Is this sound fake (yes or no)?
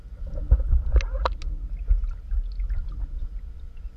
no